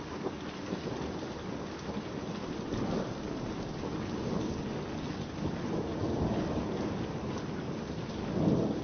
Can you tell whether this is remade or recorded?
recorded